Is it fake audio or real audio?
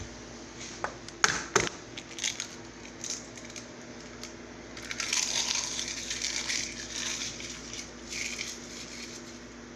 real